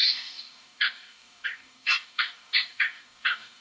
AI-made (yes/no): yes